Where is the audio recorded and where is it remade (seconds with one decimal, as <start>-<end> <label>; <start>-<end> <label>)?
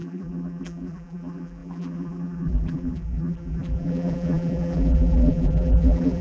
0.0-6.2 remade